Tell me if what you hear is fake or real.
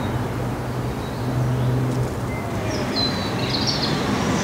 real